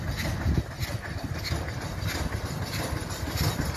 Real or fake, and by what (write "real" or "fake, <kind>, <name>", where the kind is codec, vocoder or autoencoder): real